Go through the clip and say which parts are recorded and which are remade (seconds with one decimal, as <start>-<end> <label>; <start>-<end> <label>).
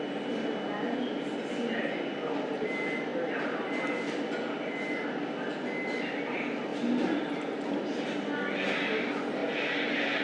0.0-3.1 recorded; 3.1-6.0 remade; 6.0-9.4 recorded; 9.4-10.2 remade